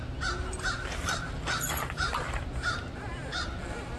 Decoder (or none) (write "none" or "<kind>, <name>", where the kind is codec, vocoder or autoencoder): none